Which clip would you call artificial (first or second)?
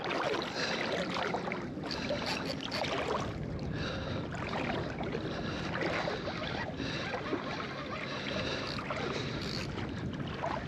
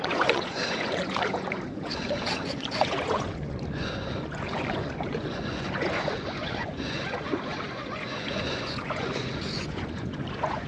second